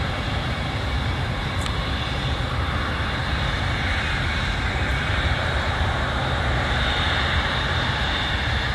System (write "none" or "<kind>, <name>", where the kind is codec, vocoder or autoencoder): vocoder, BigVGAN v2